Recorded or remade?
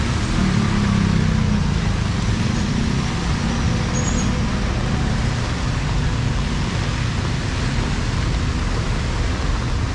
recorded